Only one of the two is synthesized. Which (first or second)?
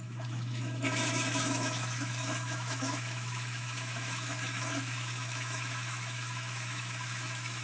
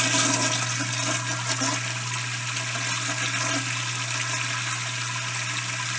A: first